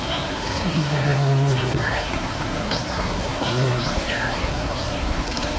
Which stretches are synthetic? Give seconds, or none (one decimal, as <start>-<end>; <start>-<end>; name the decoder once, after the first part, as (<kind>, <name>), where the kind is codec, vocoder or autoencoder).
0.0-5.6 (codec, SNAC)